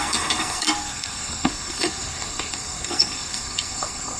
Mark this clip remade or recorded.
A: remade